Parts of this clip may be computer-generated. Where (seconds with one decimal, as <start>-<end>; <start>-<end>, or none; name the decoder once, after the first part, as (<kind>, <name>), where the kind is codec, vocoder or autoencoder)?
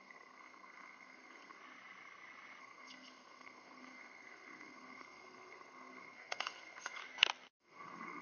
0.0-1.6 (codec, SNAC); 2.6-7.0; 7.6-8.2